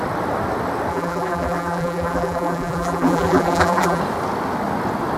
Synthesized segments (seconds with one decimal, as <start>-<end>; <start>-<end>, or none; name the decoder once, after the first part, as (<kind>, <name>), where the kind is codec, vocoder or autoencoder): 0.9-4.0 (vocoder, BigVGAN v2)